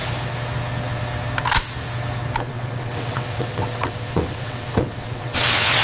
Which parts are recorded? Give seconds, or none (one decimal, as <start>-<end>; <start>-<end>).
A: 0.0-2.5

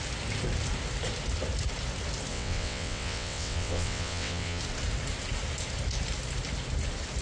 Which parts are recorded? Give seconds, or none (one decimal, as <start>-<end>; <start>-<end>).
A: 0.0-2.3; 4.6-7.2

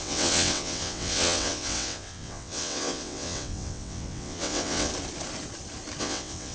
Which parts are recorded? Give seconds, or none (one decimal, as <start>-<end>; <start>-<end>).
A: 4.9-6.0

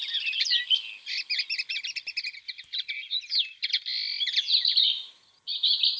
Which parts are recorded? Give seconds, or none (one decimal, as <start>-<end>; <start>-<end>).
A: 0.0-6.0

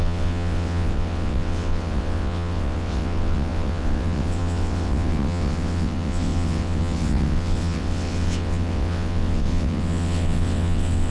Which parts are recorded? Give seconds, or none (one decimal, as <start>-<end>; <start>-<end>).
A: none

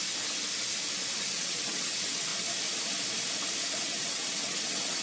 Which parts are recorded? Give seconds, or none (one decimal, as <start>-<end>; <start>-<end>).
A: 0.0-1.2; 2.3-3.8

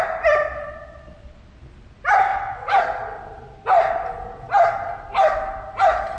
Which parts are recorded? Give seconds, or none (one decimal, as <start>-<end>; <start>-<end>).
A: 0.0-2.3; 2.8-6.2